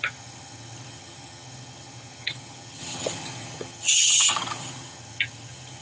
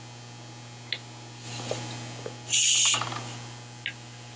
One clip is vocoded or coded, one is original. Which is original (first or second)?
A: second